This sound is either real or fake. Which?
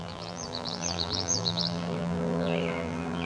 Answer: fake